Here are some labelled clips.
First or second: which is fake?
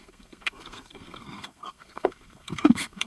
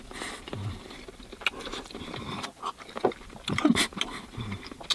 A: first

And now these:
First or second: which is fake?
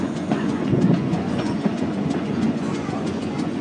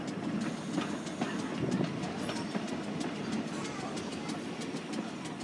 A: first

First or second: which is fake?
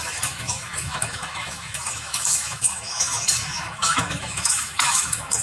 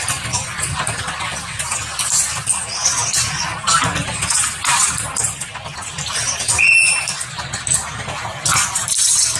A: first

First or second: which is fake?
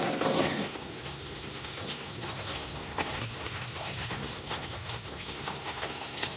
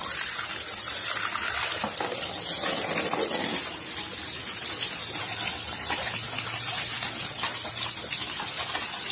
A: first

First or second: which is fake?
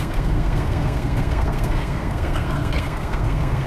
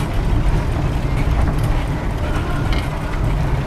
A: first